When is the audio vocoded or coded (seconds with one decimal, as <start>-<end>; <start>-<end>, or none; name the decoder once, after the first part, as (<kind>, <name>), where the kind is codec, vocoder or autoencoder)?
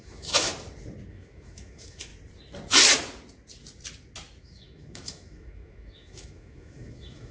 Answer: 0.0-0.5 (autoencoder, DAC-VAE); 1.1-2.1; 4.4-7.3